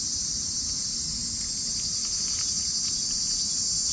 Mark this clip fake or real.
real